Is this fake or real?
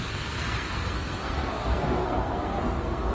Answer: fake